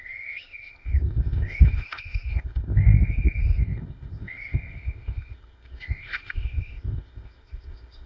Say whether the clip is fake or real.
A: fake